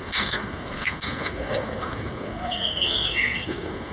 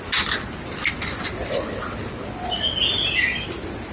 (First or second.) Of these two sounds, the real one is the second